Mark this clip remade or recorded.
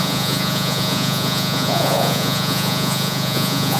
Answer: remade